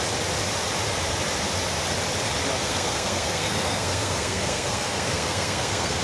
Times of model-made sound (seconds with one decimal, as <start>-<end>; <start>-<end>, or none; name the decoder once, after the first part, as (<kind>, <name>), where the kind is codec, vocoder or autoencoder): 2.6-6.0 (codec, SNAC)